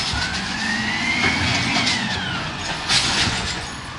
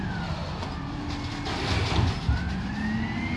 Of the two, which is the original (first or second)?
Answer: second